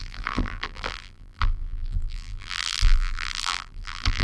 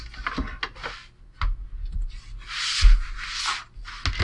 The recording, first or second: second